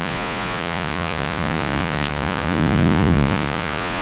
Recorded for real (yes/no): no